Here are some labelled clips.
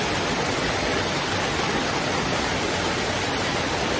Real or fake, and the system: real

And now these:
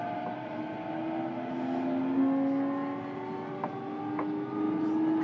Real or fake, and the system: real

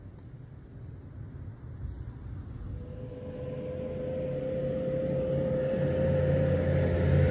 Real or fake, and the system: real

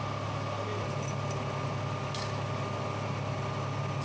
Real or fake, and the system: real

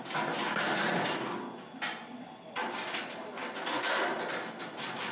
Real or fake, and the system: real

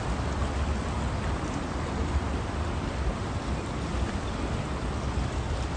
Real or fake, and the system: real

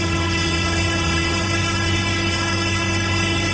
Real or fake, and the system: fake, codec, HILCodec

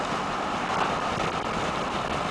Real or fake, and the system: real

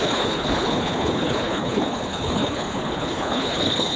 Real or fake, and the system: fake, codec, HILCodec